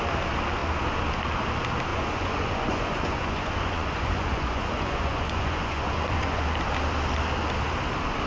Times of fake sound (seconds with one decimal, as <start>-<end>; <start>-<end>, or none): 1.9-6.4